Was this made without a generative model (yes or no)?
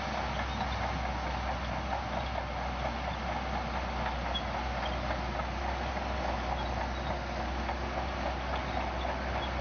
yes